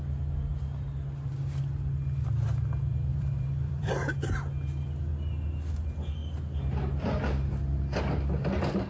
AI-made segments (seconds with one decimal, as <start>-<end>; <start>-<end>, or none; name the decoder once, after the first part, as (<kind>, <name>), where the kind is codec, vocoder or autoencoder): 3.1-3.9 (vocoder, BigVGAN v2)